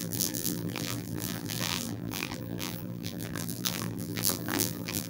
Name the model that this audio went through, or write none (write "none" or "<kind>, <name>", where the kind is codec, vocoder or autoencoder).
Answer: vocoder, BigVGAN v2